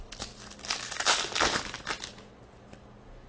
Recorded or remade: recorded